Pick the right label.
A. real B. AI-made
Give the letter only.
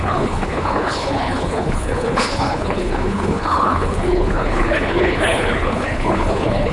B